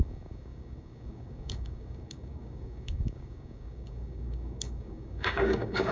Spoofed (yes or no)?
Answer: yes